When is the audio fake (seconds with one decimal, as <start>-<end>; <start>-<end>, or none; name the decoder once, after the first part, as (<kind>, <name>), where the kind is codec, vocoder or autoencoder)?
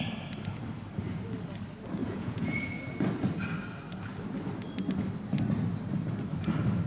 2.0-2.8 (vocoder, Vocos)